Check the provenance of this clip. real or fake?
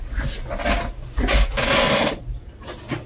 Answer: real